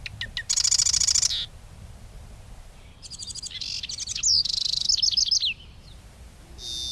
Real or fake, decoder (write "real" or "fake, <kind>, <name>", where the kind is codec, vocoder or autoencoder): real